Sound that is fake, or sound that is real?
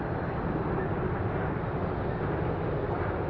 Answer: real